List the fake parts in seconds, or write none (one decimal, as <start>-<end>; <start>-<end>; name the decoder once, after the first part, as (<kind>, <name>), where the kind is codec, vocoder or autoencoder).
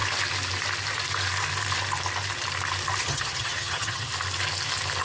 3.0-4.1 (vocoder, HiFi-GAN)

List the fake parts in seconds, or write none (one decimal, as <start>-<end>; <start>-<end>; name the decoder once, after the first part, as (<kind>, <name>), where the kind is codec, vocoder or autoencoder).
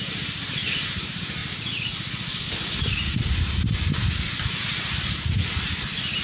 0.0-1.4 (vocoder, BigVGAN v2); 4.6-6.2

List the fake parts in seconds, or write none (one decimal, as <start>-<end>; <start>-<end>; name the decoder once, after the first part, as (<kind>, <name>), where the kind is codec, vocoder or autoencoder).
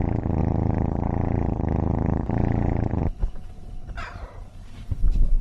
0.4-3.0 (vocoder, BigVGAN v2)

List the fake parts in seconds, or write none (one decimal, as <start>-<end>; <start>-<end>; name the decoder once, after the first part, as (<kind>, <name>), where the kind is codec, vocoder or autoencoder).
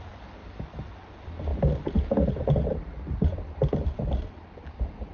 0.0-1.5 (vocoder, BigVGAN v2); 3.5-5.1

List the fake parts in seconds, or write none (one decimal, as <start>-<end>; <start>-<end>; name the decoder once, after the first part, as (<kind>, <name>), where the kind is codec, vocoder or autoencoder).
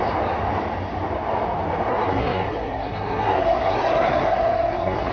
1.9-5.1 (codec, SNAC)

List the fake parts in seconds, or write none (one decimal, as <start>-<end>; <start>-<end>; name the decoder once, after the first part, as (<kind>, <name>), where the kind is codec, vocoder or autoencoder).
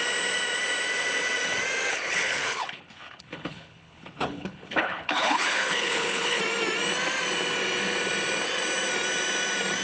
1.9-6.4 (codec, HILCodec)